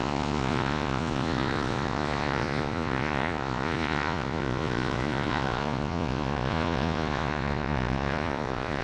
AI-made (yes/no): yes